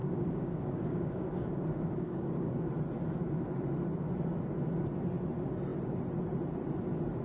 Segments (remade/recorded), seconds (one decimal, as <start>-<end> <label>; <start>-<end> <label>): 0.0-2.7 remade; 2.7-7.2 recorded